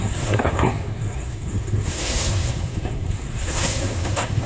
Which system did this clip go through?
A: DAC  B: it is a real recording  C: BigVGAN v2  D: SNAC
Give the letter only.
D